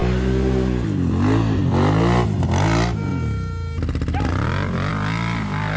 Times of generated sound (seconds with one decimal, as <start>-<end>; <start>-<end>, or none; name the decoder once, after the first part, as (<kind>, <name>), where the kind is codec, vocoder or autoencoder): none